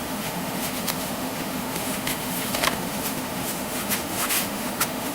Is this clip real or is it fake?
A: fake